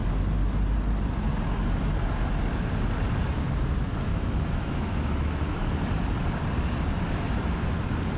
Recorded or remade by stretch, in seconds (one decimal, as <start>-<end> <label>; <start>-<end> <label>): 0.0-4.1 recorded; 4.1-5.7 remade; 5.7-8.2 recorded